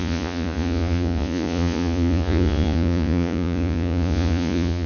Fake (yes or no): yes